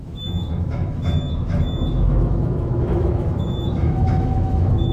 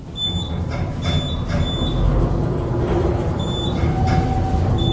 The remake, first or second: first